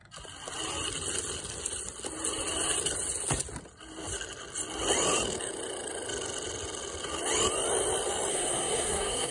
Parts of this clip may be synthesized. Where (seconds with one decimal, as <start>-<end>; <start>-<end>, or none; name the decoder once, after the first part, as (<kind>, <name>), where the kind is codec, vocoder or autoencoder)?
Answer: 8.3-9.3 (codec, SNAC)